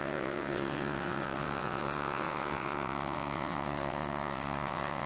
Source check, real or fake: fake